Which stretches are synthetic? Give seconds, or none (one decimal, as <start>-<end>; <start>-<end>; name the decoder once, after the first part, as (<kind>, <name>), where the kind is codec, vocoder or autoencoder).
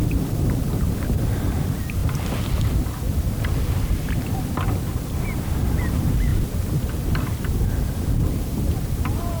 0.0-2.0 (vocoder, BigVGAN v2); 5.8-6.3; 7.3-9.4